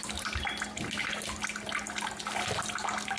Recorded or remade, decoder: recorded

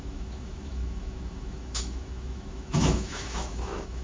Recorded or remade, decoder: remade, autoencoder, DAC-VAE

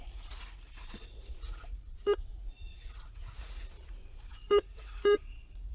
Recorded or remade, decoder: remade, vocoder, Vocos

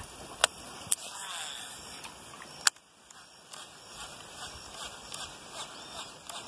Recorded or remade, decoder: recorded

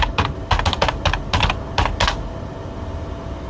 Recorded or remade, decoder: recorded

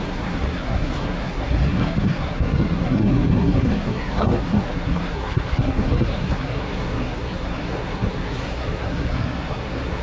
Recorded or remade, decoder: remade, codec, SNAC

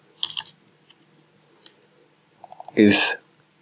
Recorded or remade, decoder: recorded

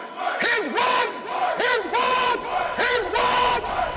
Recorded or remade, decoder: remade, vocoder, WaveNeXt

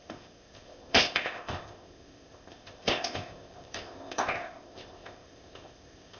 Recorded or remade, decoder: remade, codec, ZipCodec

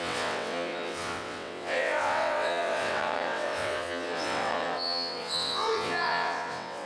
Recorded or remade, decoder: remade, vocoder, WaveNeXt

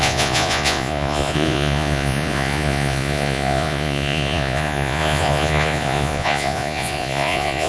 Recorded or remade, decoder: remade, vocoder, Vocos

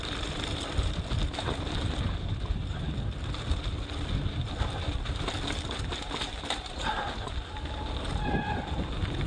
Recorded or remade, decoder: recorded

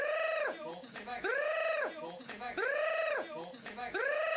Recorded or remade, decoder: remade, vocoder, Vocos